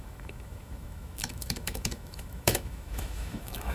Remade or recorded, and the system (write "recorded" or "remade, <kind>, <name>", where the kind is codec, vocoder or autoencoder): remade, autoencoder, DAC-VAE